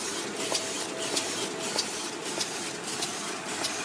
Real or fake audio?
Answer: real